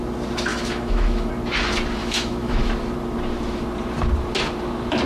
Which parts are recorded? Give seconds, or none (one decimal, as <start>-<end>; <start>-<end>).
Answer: 0.0-0.5; 1.3-2.0; 2.7-5.1